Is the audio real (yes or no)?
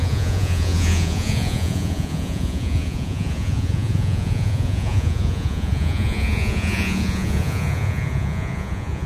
no